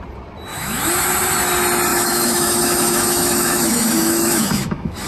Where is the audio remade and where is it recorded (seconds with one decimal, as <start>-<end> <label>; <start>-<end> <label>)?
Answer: 0.0-0.5 recorded; 0.5-1.0 remade; 1.0-1.9 recorded; 1.9-5.1 remade